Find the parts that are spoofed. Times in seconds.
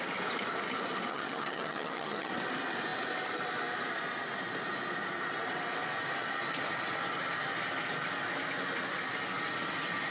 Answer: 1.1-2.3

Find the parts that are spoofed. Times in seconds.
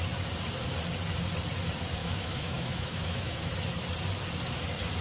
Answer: 2.0-3.5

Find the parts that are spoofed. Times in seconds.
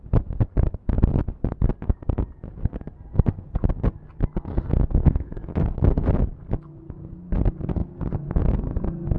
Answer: 5.0-6.0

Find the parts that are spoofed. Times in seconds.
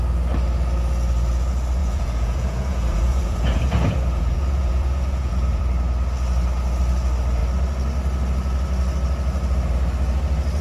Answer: 1.8-5.6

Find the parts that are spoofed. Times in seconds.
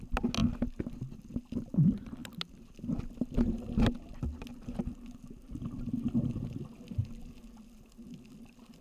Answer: none